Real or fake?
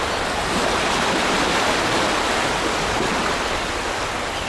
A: real